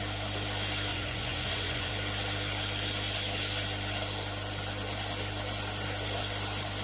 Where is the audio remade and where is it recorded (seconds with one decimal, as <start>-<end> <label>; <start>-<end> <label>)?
0.0-0.9 recorded; 0.9-1.9 remade; 1.9-6.8 recorded